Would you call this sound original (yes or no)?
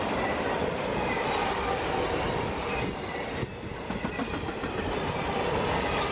no